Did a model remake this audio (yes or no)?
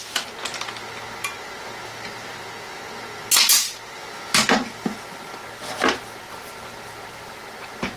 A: no